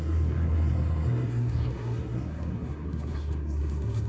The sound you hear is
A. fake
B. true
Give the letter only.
A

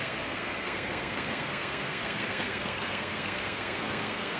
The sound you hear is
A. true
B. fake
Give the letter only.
B